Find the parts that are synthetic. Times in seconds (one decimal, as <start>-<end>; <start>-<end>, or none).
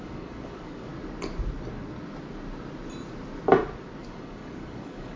0.0-0.9; 4.0-5.2